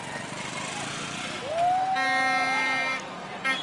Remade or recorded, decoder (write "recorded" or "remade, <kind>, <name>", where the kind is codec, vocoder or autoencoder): recorded